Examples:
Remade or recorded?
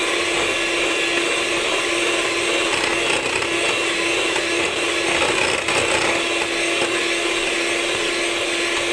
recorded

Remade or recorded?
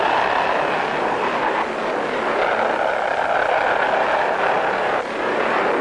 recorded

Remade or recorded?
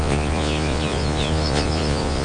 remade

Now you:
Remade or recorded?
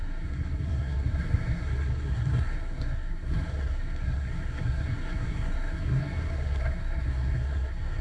remade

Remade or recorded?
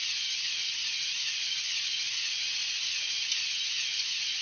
recorded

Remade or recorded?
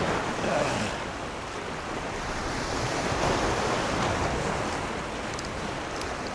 recorded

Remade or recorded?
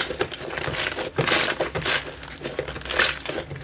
recorded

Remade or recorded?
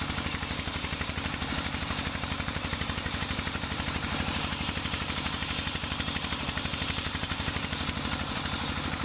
remade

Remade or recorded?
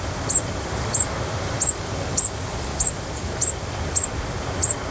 recorded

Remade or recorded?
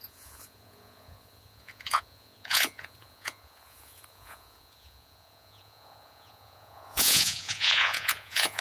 remade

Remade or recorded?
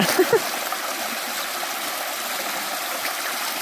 recorded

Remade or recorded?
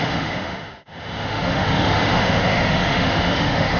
remade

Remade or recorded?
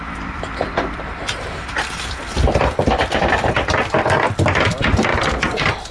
remade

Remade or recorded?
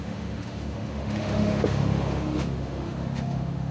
remade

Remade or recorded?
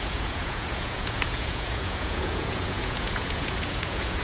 remade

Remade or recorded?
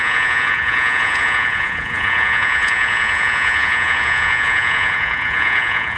remade